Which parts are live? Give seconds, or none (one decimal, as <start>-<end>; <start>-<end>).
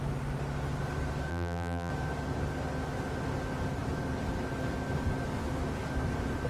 0.0-1.3; 1.9-6.5